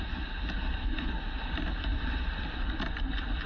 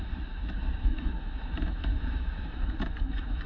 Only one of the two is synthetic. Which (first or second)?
second